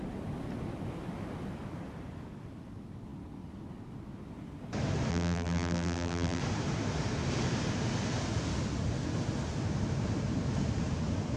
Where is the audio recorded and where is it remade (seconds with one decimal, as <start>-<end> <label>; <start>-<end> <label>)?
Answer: 0.0-5.1 recorded; 5.1-6.4 remade; 6.4-11.4 recorded